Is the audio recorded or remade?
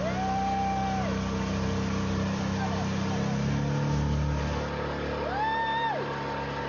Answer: recorded